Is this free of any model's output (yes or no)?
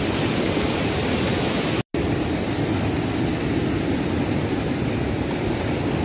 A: yes